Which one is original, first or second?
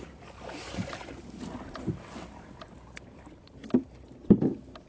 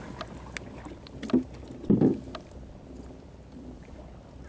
second